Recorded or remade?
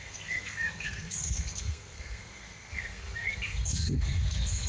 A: remade